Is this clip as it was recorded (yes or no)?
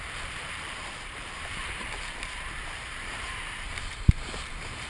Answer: no